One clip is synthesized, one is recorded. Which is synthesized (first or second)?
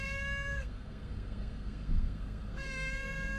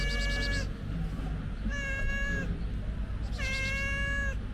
first